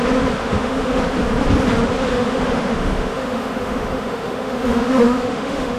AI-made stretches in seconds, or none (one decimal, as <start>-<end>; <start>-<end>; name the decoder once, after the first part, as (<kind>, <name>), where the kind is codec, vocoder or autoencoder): 0.4-1.0 (autoencoder, DAC-VAE); 2.1-5.8